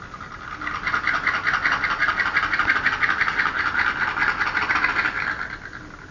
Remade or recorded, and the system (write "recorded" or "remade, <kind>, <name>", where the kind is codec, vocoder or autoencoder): recorded